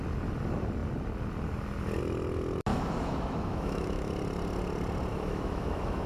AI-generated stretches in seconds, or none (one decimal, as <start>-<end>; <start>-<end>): 2.7-4.1; 5.1-6.1